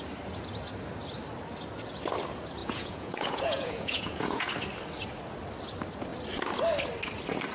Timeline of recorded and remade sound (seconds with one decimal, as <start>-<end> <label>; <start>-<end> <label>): 0.0-2.6 recorded; 2.6-4.5 remade; 4.5-7.5 recorded